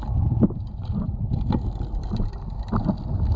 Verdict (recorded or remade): recorded